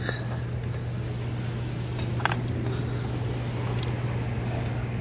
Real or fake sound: real